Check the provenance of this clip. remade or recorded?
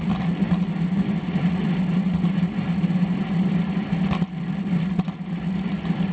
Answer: recorded